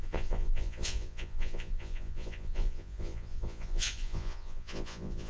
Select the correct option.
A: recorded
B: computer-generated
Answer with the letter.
B